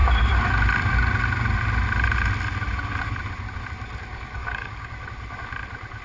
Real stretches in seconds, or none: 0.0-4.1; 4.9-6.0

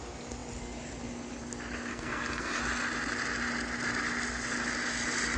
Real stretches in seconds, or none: 0.0-1.9; 2.6-5.4

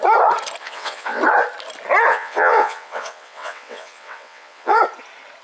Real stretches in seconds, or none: 0.0-0.6; 1.2-2.1; 4.8-5.4

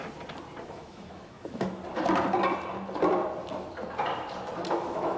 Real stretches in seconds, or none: 0.0-0.6; 1.8-4.7

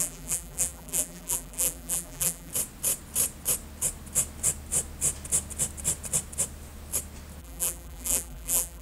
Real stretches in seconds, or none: 2.5-7.4